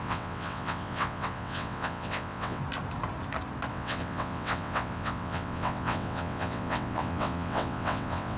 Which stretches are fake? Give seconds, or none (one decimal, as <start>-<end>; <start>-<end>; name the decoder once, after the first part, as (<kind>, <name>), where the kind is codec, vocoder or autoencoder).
0.0-2.6 (vocoder, WaveNeXt); 3.7-8.4

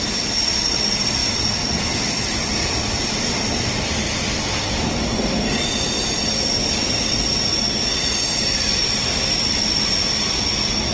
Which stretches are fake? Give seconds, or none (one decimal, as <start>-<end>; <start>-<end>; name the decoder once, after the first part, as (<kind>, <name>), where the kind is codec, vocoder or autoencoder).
none

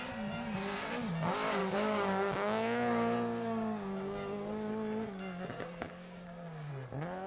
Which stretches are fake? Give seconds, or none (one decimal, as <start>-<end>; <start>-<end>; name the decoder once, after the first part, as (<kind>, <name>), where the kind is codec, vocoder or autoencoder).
1.6-4.7 (codec, DAC); 5.5-6.7